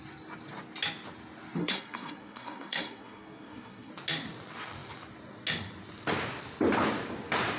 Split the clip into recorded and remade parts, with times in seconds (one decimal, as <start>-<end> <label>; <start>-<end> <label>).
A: 0.0-1.6 recorded; 1.6-3.9 remade; 3.9-7.6 recorded